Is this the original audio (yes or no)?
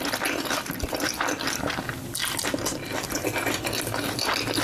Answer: yes